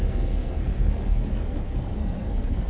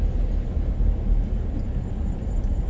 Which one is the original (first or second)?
second